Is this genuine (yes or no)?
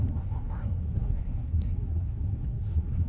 no